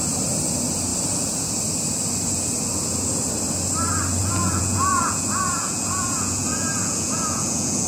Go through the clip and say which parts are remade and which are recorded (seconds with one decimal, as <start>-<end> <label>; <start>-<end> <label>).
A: 0.0-4.2 recorded; 4.2-7.9 remade